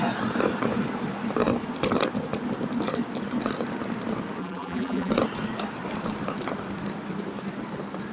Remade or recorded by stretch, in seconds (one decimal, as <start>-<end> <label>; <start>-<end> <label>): 0.0-4.4 recorded; 4.4-5.1 remade; 5.1-8.1 recorded